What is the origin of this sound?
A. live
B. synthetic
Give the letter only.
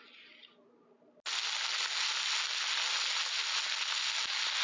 A